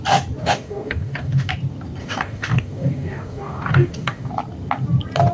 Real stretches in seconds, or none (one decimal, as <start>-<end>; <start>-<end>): 0.0-0.4; 1.5-2.0; 4.3-5.3